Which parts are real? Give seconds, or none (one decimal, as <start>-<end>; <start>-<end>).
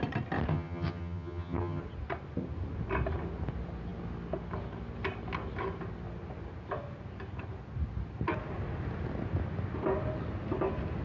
0.0-0.5; 1.8-11.0